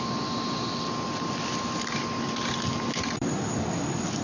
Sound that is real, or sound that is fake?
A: real